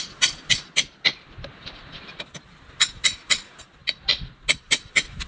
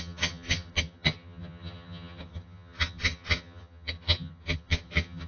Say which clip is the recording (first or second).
first